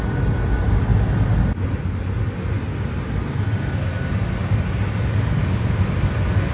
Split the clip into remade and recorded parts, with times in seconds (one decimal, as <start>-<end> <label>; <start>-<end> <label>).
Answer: 0.0-6.5 recorded